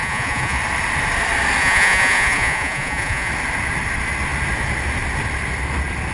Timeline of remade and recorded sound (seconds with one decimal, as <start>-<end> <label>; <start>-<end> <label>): 0.0-0.6 remade; 0.6-1.6 recorded; 1.6-3.3 remade; 3.3-6.1 recorded